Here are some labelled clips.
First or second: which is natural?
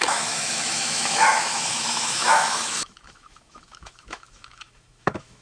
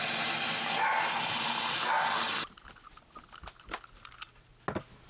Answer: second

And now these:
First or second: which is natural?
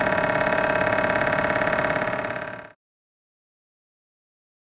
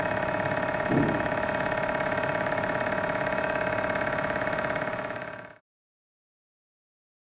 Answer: first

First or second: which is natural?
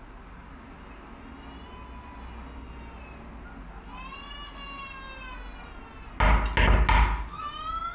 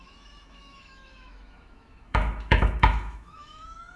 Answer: first